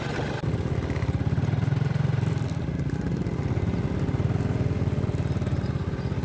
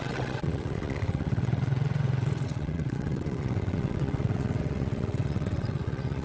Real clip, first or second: first